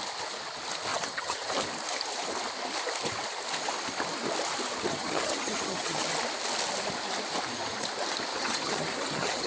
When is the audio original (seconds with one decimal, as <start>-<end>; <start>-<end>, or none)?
0.0-0.9; 1.5-4.9; 6.0-8.3